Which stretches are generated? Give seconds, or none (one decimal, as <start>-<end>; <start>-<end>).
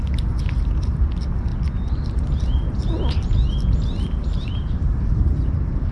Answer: none